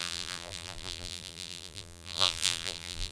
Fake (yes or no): yes